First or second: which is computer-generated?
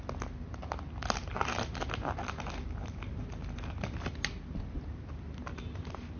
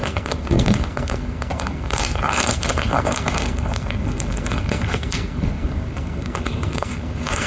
second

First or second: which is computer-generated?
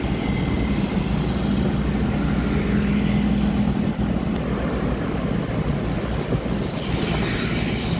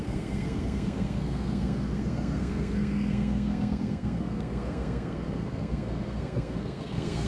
second